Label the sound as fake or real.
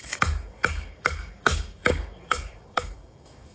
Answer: fake